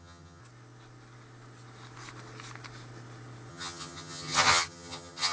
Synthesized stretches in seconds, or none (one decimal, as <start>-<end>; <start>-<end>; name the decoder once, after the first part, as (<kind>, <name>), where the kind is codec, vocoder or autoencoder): 0.0-0.4 (vocoder, HiFi-GAN); 3.5-5.3